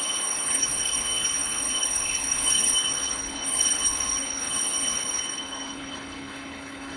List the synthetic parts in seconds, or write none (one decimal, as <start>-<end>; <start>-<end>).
0.0-7.0